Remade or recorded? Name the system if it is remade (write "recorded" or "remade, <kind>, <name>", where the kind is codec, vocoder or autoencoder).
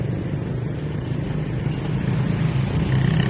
recorded